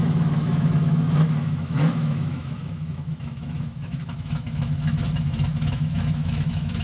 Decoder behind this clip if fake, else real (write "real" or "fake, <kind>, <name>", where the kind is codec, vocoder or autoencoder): fake, autoencoder, DAC-VAE